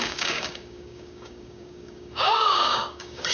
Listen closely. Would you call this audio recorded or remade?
remade